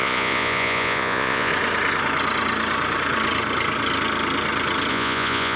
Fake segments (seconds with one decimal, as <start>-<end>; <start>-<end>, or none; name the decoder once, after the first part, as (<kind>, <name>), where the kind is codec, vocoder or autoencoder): 0.0-1.5 (vocoder, Vocos); 4.9-5.6